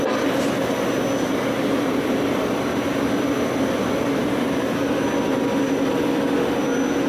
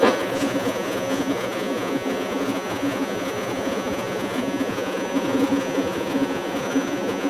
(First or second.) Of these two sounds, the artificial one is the second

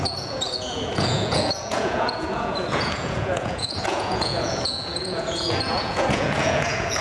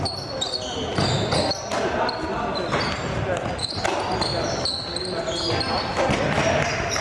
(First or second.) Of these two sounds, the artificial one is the first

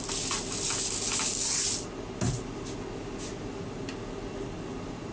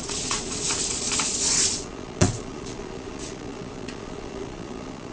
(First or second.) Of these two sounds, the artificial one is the second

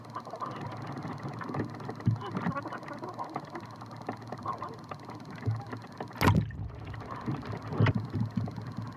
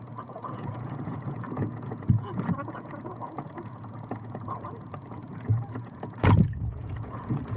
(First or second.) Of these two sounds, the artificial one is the second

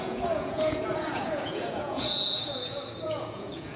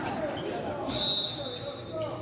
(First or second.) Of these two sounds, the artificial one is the first